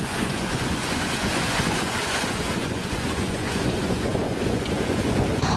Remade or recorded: remade